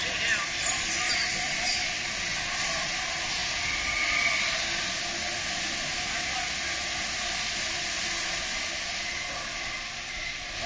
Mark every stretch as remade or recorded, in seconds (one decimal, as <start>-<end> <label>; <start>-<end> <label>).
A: 0.0-10.7 recorded